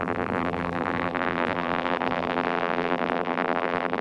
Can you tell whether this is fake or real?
fake